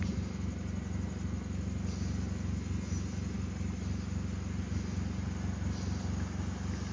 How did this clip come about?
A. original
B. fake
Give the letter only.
A